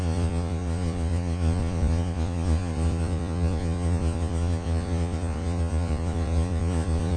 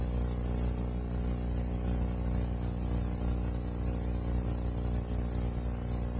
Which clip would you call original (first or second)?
second